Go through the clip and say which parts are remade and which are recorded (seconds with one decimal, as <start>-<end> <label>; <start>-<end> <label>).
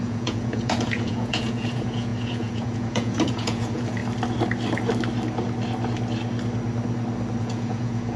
0.0-4.0 remade; 4.0-7.4 recorded; 7.4-8.2 remade